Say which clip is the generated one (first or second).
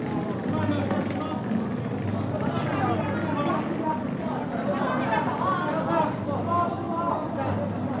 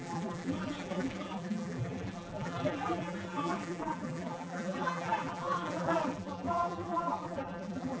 second